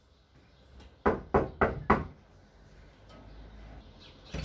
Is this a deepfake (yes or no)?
no